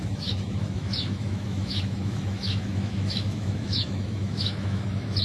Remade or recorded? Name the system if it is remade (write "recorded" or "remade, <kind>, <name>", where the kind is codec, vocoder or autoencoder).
remade, autoencoder, DAC-VAE